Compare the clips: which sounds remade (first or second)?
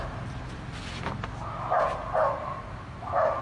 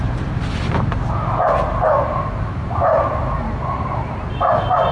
second